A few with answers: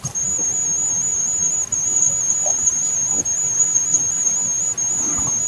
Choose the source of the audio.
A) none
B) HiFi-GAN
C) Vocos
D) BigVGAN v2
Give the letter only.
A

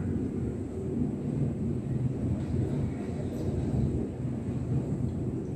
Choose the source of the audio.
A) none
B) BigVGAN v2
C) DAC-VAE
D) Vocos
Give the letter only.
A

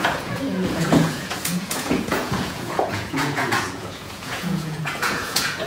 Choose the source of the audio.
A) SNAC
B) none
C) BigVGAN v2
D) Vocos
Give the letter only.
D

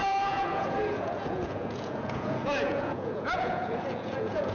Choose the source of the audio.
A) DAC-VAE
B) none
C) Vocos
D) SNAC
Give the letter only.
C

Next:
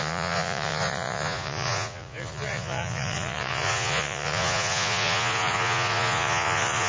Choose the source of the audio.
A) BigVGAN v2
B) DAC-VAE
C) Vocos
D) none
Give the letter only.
C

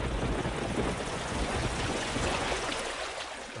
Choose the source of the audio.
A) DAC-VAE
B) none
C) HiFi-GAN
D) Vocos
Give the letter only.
D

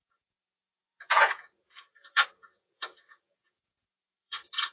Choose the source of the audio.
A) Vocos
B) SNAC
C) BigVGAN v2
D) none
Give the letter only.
A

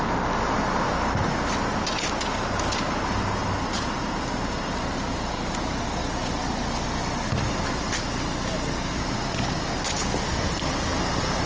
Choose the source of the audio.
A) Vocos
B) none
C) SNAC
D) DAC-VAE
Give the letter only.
B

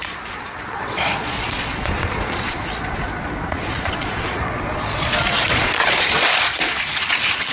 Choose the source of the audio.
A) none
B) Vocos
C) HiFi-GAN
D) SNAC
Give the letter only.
B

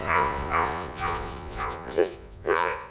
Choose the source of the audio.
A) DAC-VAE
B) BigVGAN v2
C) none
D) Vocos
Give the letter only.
D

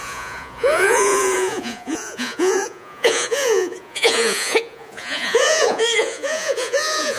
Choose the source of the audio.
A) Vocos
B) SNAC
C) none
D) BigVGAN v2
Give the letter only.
A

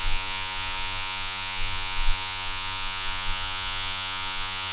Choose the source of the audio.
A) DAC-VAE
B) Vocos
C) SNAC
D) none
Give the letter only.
B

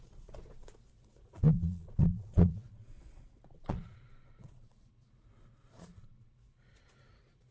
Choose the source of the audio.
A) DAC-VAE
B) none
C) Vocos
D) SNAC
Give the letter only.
C